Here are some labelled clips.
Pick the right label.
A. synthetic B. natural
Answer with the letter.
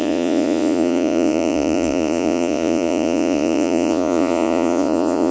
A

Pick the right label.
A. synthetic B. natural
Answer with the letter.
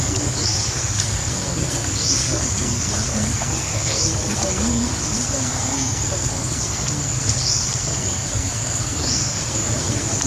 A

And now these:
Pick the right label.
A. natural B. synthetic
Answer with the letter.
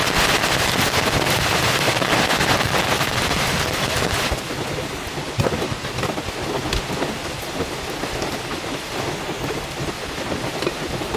A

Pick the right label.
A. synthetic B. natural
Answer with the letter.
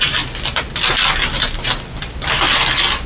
B